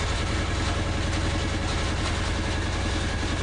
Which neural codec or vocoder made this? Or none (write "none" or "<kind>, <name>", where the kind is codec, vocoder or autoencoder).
none